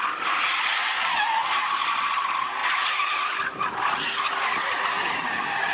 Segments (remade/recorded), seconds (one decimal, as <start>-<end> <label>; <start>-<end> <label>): 0.0-5.7 recorded